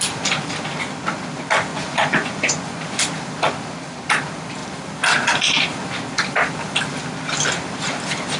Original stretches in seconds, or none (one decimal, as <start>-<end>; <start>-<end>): 0.0-1.7; 2.8-8.4

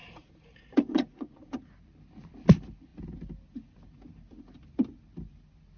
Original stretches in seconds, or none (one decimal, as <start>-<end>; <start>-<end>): 1.5-5.8

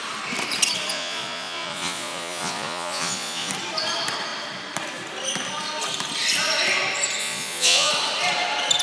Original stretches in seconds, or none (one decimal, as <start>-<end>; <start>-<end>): 0.0-0.9; 3.5-7.2; 7.9-8.8

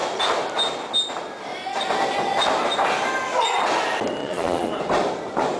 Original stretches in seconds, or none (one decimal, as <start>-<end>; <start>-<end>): 0.0-4.2; 4.7-5.6

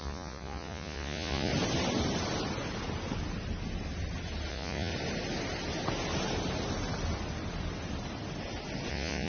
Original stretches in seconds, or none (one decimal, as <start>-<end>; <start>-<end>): 1.5-4.5; 4.9-8.9

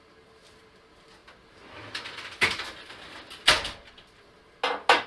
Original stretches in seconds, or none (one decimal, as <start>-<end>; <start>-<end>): 0.0-5.1

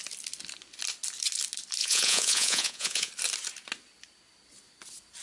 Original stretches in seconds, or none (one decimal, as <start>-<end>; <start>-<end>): 0.0-1.8; 3.1-5.2